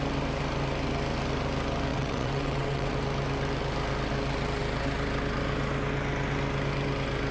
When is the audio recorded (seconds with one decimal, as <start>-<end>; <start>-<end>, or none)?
0.0-1.9; 3.0-7.3

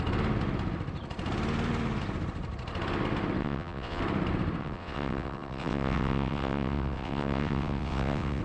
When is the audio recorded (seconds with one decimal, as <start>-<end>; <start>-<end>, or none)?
0.0-3.4; 4.0-4.6

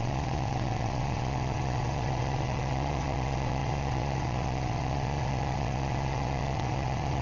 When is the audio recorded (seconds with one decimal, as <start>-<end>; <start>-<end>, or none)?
none